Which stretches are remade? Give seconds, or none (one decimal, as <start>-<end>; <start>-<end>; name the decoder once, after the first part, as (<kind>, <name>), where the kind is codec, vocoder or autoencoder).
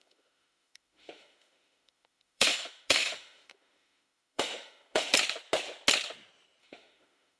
0.0-5.1 (autoencoder, DAC-VAE); 6.6-7.4